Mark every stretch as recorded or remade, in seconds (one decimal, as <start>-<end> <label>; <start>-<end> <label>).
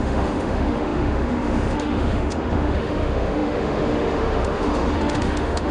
0.0-5.7 remade